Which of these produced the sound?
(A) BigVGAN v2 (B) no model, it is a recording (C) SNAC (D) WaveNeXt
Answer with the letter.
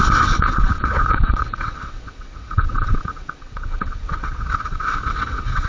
D